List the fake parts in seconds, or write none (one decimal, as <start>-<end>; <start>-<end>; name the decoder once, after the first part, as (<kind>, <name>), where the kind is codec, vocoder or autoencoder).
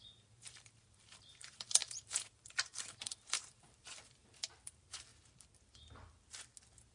0.0-5.1 (vocoder, BigVGAN v2)